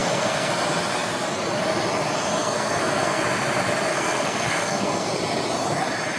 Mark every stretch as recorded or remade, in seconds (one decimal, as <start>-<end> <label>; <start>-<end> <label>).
0.0-0.5 remade; 0.5-2.4 recorded; 2.4-3.2 remade; 3.2-3.9 recorded; 3.9-5.1 remade; 5.1-6.2 recorded